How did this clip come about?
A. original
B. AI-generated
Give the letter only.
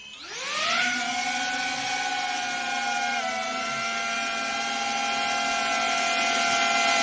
A